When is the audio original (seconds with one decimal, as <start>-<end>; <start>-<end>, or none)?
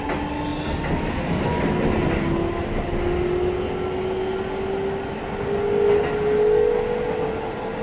0.0-7.8